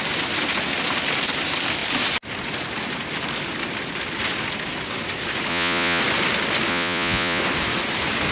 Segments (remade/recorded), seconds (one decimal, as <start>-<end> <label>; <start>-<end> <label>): 0.0-5.5 recorded; 5.5-6.0 remade; 6.0-6.7 recorded; 6.7-7.4 remade; 7.4-8.3 recorded